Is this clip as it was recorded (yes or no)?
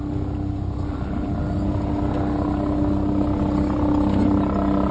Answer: yes